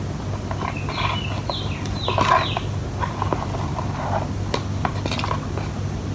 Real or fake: real